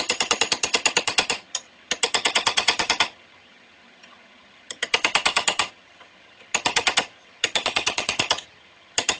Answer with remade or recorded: remade